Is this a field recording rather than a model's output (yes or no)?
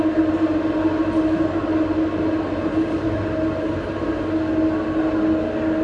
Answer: yes